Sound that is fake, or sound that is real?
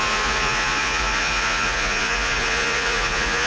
fake